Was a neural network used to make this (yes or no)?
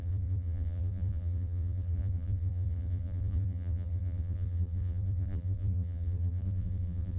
yes